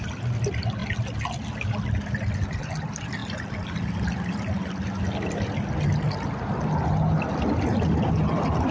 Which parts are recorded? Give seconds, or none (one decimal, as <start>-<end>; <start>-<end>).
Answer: 0.0-8.7